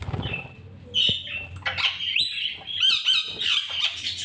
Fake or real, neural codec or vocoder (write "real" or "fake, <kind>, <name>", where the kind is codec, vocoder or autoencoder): real